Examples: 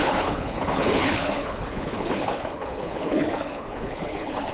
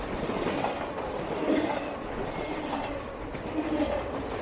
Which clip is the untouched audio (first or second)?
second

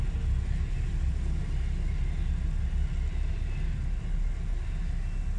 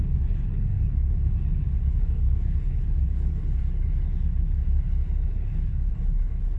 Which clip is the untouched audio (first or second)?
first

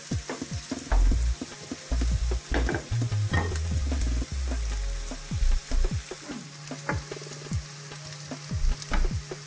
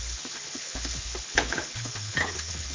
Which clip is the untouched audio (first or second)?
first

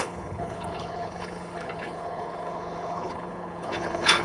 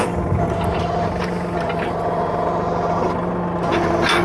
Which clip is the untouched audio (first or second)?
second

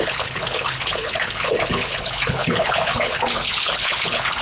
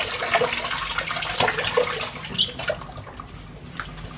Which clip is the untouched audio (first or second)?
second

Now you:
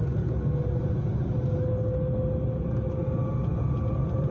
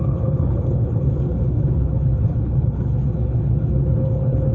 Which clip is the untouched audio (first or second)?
first